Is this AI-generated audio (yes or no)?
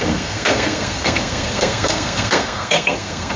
yes